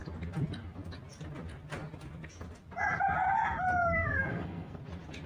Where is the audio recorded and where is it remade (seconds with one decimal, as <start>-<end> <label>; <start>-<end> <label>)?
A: 0.0-3.8 recorded; 3.8-4.8 remade; 4.8-5.3 recorded